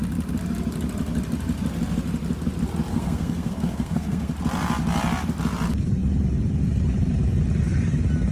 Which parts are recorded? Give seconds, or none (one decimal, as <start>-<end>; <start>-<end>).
0.0-2.9; 4.3-8.3